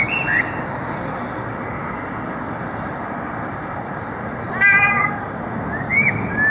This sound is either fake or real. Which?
real